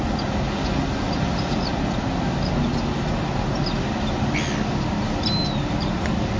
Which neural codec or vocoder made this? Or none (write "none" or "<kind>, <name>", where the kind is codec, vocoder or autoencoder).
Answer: none